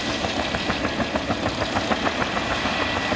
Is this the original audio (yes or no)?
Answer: yes